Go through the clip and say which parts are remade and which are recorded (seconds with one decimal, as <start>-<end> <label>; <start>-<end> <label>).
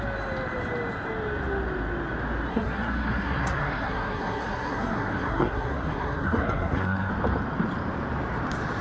0.0-2.5 recorded; 2.5-7.1 remade; 7.1-8.8 recorded